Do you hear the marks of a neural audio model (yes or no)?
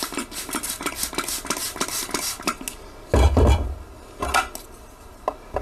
no